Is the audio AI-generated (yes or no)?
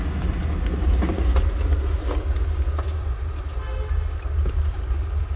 no